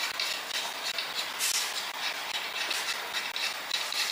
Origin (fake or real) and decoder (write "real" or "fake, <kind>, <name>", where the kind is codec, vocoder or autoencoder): real